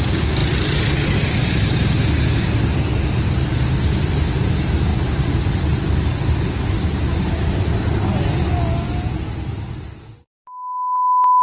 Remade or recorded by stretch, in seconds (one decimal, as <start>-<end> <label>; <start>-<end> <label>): 0.0-11.4 recorded